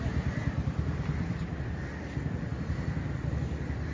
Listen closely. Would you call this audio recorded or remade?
remade